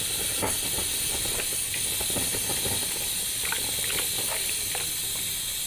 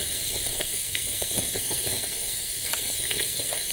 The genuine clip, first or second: first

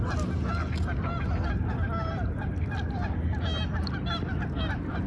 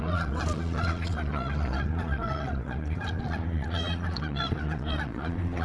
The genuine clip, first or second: first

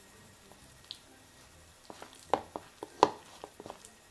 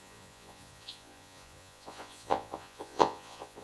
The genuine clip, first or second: first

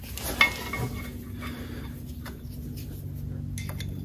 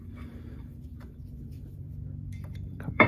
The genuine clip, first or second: first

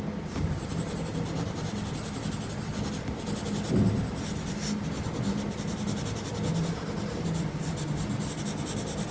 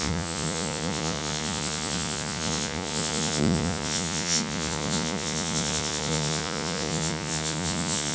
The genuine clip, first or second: first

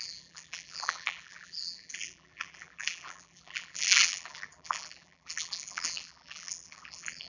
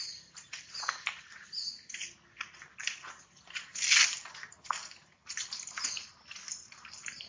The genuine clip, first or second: second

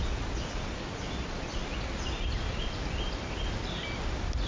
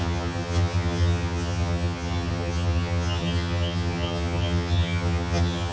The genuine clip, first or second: first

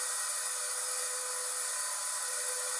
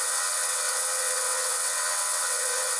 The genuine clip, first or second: first